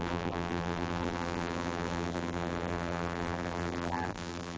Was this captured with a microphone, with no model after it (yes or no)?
no